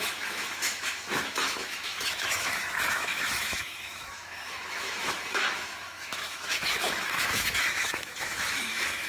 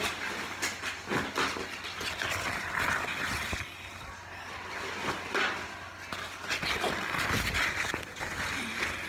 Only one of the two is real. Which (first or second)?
second